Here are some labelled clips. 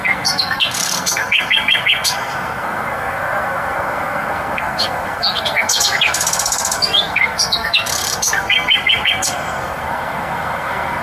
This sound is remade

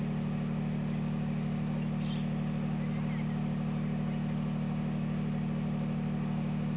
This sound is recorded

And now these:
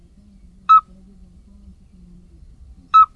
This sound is recorded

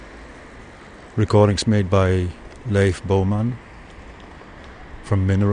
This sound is recorded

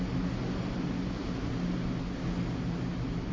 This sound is recorded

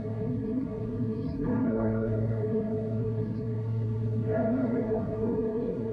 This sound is remade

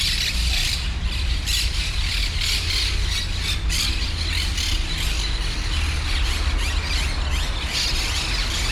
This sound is recorded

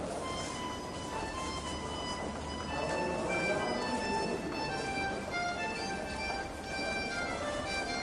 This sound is recorded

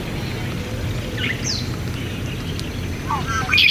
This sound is recorded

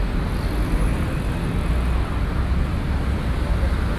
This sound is recorded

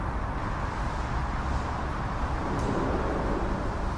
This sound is recorded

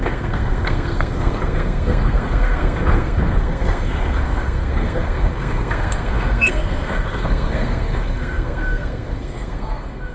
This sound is remade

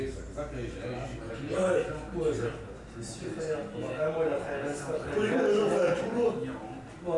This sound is recorded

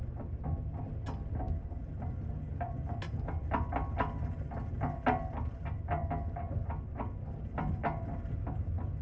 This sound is recorded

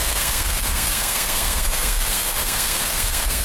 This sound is remade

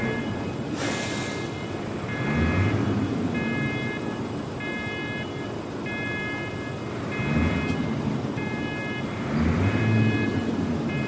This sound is recorded